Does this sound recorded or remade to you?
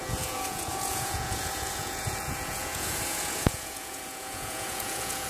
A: remade